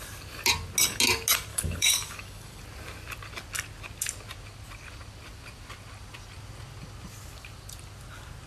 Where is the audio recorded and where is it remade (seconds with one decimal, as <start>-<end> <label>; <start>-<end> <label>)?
0.0-1.5 recorded; 1.5-2.6 remade; 2.6-8.5 recorded